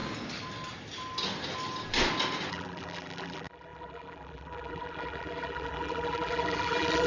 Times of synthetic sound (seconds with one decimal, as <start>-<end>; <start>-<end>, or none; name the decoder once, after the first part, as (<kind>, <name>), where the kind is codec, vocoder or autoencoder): 2.5-7.1 (vocoder, BigVGAN v2)